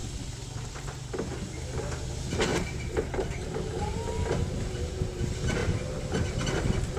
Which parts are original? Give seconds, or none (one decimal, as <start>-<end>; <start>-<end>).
0.0-2.5; 4.8-7.0